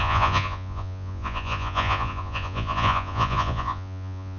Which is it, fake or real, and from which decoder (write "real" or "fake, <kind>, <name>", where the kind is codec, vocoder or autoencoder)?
fake, vocoder, Vocos